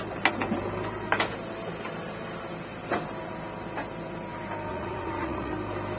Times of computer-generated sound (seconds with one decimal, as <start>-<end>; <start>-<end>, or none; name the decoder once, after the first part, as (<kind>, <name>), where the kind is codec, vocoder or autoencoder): 4.7-5.5 (vocoder, Vocos)